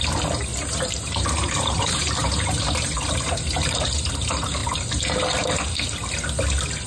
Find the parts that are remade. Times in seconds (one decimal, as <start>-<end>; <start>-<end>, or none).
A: 0.5-4.1